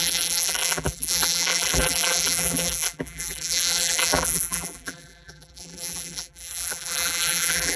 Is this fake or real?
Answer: fake